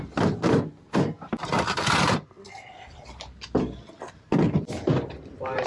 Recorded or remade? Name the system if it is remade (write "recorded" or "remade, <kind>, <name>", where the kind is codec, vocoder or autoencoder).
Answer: recorded